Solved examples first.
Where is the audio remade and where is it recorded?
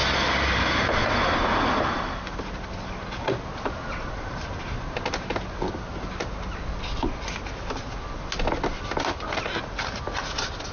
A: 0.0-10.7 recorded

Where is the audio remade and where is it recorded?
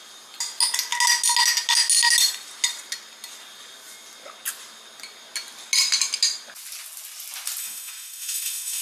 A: 0.0-7.6 recorded; 7.6-8.8 remade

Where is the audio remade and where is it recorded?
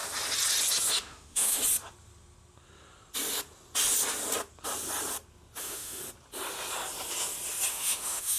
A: 0.0-1.0 recorded; 1.0-1.6 remade; 1.6-5.6 recorded; 5.6-6.0 remade; 6.0-7.7 recorded; 7.7-8.4 remade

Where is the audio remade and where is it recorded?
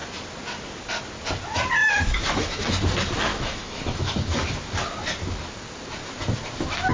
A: 0.0-1.8 recorded; 1.8-2.6 remade; 2.6-3.3 recorded; 3.3-4.5 remade; 4.5-6.9 recorded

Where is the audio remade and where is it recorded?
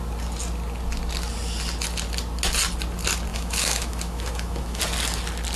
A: 0.0-3.3 recorded; 3.3-4.8 remade; 4.8-5.6 recorded